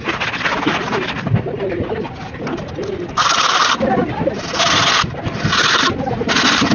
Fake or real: real